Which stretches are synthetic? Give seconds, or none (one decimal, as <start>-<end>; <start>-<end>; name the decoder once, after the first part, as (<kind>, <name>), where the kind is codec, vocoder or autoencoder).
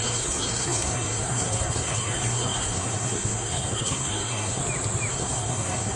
0.0-4.6 (codec, SNAC); 5.1-6.0